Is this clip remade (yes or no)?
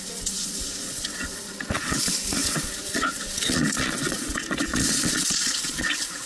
yes